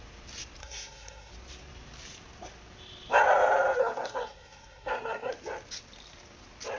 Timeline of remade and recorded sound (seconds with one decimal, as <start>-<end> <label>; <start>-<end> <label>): 0.0-0.6 recorded; 0.6-1.3 remade; 1.3-3.8 recorded; 3.8-5.3 remade; 5.3-6.8 recorded